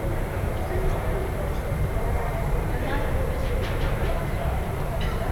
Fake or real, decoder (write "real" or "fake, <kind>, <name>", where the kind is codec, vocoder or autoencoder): fake, vocoder, BigVGAN v2